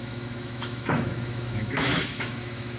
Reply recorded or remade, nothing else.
remade